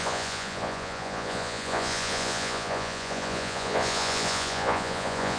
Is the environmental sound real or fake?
fake